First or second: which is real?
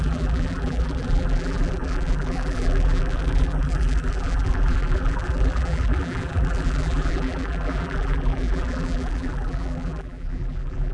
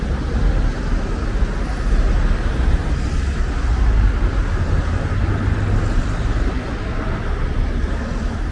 second